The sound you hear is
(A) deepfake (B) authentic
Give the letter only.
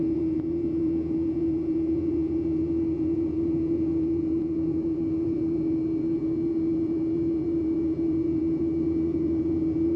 A